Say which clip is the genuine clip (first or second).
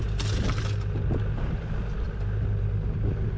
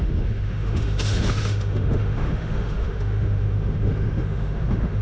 first